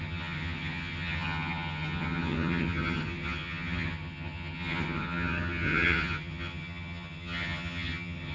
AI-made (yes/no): yes